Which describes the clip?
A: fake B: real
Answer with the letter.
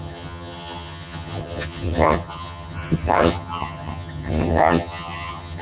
A